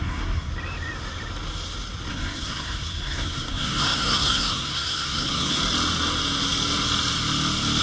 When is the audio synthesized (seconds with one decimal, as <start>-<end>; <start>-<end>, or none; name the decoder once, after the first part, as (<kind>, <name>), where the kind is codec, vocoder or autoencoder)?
0.0-0.5 (codec, SNAC); 2.1-5.6

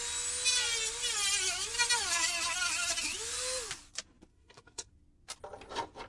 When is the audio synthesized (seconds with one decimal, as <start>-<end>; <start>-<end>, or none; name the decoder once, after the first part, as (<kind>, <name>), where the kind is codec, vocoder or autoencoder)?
4.3-4.9 (codec, SNAC)

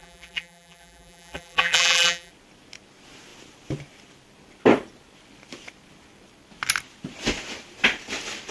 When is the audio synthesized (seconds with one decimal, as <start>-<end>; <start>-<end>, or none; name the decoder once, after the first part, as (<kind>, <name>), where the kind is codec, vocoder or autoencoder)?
0.0-2.3 (vocoder, BigVGAN v2)

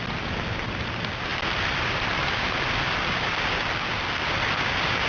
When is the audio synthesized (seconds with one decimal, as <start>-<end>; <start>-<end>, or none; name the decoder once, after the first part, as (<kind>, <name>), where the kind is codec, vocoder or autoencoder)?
none

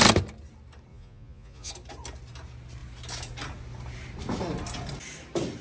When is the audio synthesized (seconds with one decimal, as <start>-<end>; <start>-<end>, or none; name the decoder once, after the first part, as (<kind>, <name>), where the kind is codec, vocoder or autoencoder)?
0.9-1.7 (vocoder, Vocos)

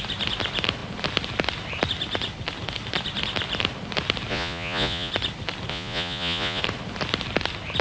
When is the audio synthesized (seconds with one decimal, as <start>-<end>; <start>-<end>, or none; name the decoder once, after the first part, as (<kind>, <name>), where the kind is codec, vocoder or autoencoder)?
4.3-5.1 (vocoder, Vocos); 5.7-6.6